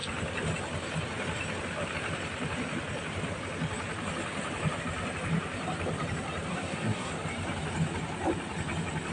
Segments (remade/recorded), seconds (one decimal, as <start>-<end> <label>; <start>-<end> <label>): 0.0-6.5 recorded; 6.5-7.1 remade; 7.1-9.1 recorded